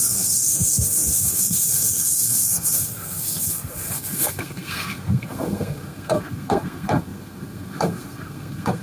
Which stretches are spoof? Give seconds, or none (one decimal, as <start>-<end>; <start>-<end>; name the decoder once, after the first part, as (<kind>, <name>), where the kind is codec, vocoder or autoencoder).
0.0-8.8 (codec, SNAC)